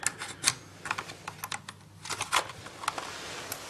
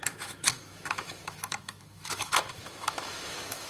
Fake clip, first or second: second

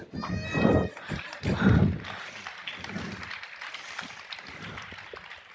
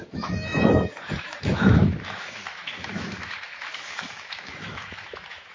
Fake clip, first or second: second